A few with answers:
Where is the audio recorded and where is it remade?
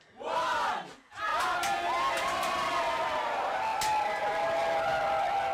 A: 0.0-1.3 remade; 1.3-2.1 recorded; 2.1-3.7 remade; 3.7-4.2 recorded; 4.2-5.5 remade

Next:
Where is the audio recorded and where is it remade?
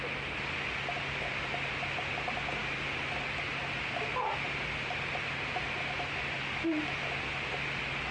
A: 0.0-8.1 recorded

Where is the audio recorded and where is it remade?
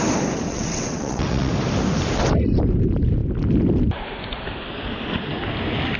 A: 0.0-0.5 recorded; 0.5-1.5 remade; 1.5-6.0 recorded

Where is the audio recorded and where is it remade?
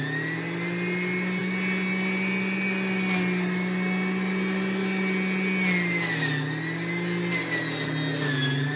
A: 0.0-8.8 recorded